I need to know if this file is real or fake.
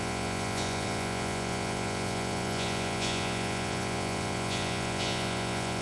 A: fake